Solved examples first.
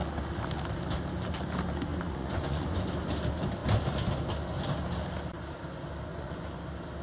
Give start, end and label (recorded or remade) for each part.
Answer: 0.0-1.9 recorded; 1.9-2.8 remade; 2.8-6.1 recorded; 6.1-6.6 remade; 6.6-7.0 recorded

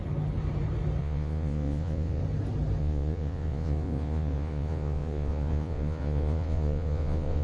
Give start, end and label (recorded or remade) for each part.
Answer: 0.0-1.0 recorded; 1.0-2.2 remade; 2.2-2.8 recorded; 2.8-7.4 remade